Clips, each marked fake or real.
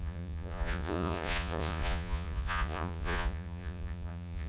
fake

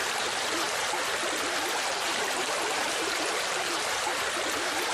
real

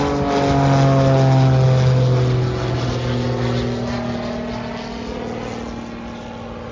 real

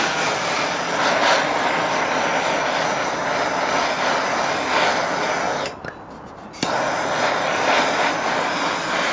real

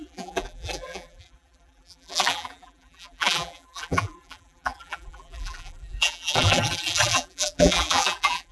fake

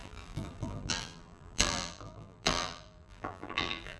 fake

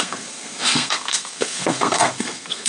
fake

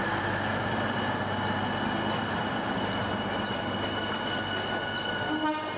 real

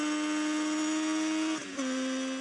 real